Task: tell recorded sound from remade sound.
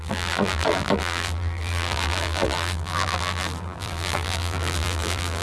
remade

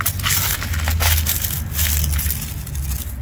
recorded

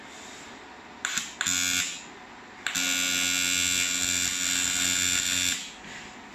recorded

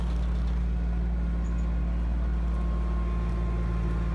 recorded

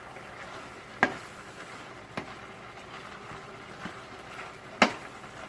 recorded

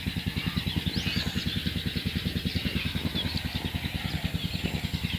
recorded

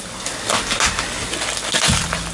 recorded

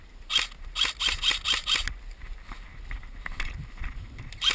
recorded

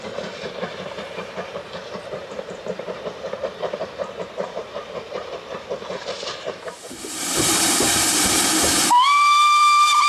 remade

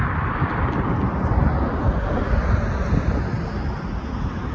recorded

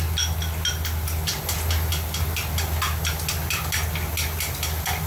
recorded